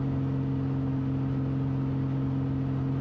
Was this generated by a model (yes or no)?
no